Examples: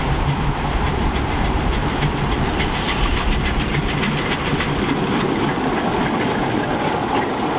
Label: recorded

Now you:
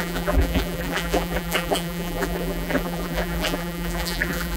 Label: remade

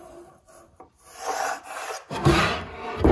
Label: remade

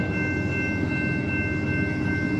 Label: recorded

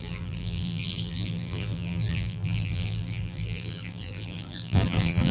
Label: remade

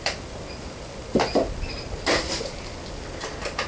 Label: recorded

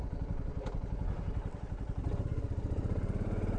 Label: recorded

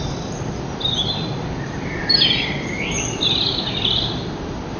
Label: remade